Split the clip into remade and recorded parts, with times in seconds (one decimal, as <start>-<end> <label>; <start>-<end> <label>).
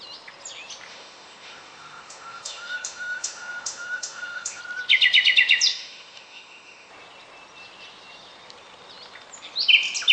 0.0-0.9 recorded; 0.9-4.6 remade; 4.6-5.7 recorded; 5.7-6.9 remade; 6.9-10.1 recorded